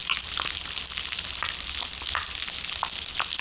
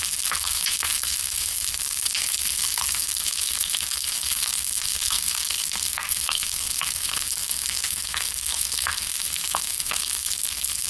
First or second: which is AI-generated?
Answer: second